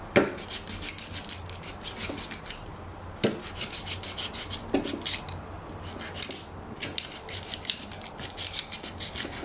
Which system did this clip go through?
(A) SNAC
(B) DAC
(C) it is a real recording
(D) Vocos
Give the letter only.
C